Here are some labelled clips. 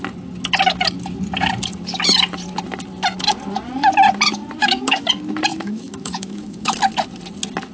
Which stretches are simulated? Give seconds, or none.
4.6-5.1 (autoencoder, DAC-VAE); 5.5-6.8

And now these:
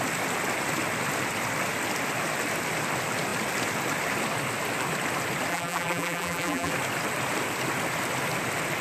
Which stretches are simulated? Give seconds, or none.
5.5-6.7 (vocoder, BigVGAN v2)

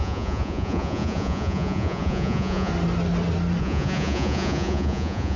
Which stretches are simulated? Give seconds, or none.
0.0-2.7 (vocoder, Vocos); 3.6-5.4

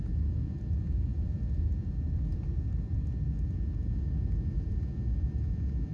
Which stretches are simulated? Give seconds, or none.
none

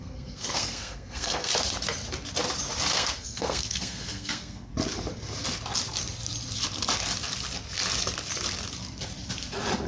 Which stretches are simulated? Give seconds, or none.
0.0-1.5 (codec, SNAC); 2.9-4.7

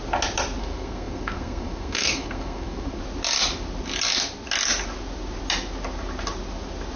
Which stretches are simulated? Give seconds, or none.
0.6-3.0 (codec, SNAC)

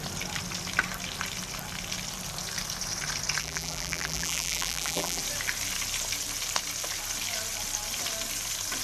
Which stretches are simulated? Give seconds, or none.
3.4-5.2 (vocoder, BigVGAN v2)

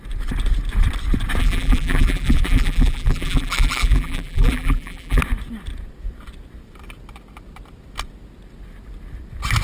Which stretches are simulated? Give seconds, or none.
1.4-5.2 (vocoder, BigVGAN v2)